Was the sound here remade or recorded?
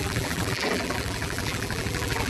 remade